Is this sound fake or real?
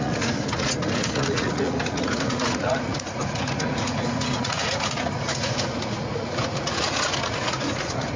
fake